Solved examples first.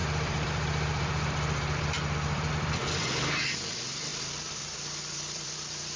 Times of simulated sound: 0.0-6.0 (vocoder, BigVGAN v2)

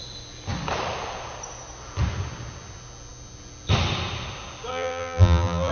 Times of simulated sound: 4.7-5.7 (vocoder, BigVGAN v2)

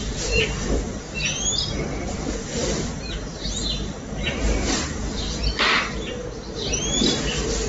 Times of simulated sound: none

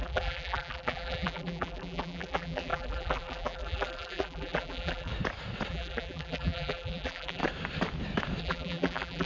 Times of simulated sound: 0.0-5.1 (vocoder, BigVGAN v2); 5.7-7.4; 8.4-9.3